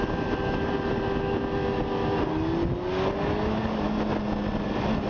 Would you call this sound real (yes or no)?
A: yes